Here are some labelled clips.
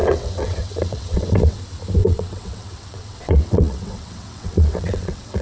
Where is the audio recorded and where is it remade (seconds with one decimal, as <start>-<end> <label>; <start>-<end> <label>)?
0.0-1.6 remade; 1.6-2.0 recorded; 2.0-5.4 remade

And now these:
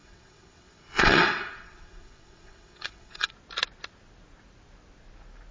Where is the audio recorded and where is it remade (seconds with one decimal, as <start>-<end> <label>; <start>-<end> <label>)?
0.0-3.3 remade; 3.3-5.5 recorded

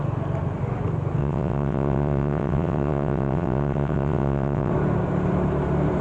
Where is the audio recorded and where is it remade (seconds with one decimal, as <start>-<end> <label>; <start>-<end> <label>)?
0.0-1.2 recorded; 1.2-4.7 remade; 4.7-6.0 recorded

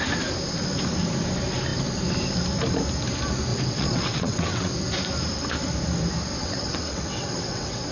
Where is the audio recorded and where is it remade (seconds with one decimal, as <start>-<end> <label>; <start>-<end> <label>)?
0.0-3.5 recorded; 3.5-4.7 remade; 4.7-6.4 recorded; 6.4-7.9 remade